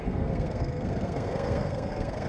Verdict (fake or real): fake